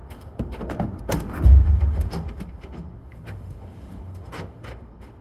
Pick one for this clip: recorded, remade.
remade